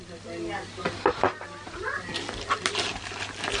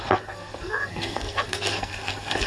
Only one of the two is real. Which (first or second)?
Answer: first